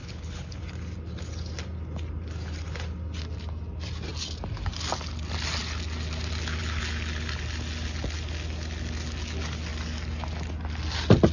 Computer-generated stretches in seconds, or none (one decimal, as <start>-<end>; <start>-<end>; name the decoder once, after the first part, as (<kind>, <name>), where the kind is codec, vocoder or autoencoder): 0.0-0.6 (codec, HILCodec)